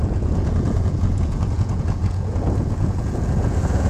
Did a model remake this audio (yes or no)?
yes